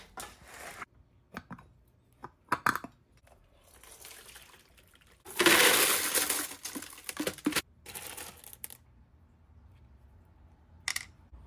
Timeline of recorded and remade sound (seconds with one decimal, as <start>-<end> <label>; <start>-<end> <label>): 0.0-11.5 recorded